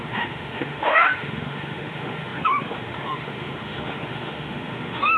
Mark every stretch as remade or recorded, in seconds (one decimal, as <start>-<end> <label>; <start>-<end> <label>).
0.0-5.2 remade